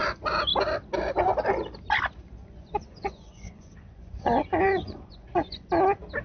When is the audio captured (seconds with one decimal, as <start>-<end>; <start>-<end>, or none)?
0.0-2.4; 5.7-6.2